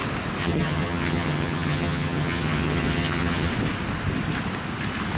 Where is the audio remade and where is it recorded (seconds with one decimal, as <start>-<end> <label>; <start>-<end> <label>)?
0.0-0.4 recorded; 0.4-3.5 remade; 3.5-5.2 recorded